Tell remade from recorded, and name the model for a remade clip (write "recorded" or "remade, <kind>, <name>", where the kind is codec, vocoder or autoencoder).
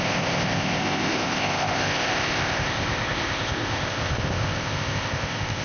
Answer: remade, codec, ZipCodec